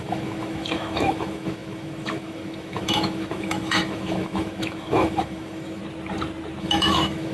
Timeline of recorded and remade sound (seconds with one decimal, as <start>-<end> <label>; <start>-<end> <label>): 0.0-5.8 remade; 5.8-6.6 recorded; 6.6-7.3 remade